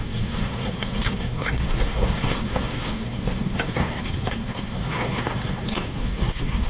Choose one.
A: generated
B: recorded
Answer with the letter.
A